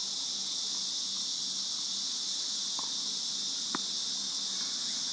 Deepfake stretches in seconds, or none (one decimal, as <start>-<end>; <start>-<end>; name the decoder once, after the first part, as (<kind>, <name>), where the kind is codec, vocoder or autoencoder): none